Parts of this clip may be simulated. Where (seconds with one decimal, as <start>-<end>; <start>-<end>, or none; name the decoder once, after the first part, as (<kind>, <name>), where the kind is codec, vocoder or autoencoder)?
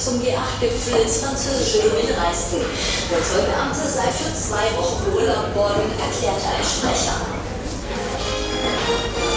7.8-8.9 (codec, SNAC)